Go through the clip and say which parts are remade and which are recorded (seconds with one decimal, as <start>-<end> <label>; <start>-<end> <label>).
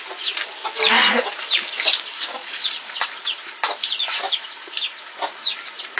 0.0-2.4 recorded; 2.4-3.0 remade; 3.0-6.0 recorded